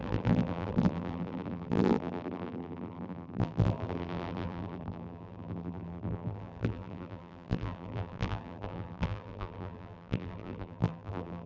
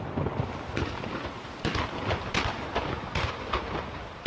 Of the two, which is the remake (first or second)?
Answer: first